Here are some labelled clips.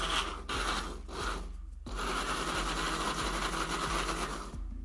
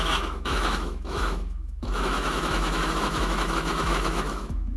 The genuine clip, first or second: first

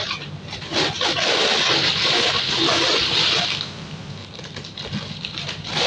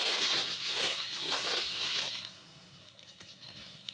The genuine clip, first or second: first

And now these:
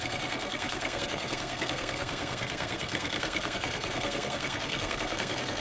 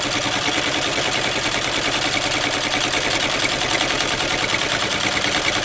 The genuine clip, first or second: second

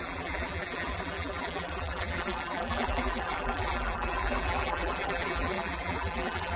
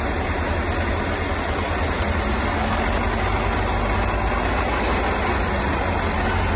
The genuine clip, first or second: second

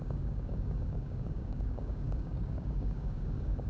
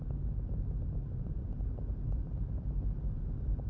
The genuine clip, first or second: second